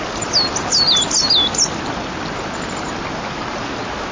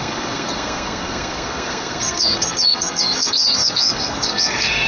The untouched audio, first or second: first